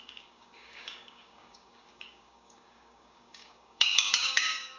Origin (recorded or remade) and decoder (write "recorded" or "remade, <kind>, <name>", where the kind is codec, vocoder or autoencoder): remade, codec, DAC